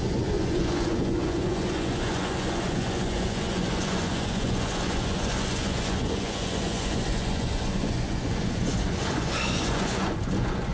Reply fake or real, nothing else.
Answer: fake